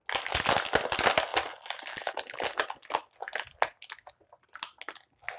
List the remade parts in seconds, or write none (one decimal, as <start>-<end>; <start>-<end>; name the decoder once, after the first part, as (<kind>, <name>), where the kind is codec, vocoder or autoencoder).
none